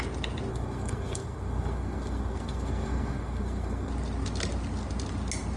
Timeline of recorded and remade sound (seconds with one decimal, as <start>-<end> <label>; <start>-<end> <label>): 0.0-0.5 recorded; 0.5-3.9 remade; 3.9-5.6 recorded